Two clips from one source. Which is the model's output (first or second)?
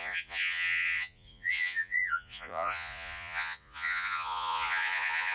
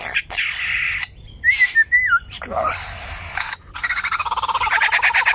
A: first